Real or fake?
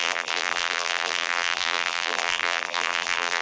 fake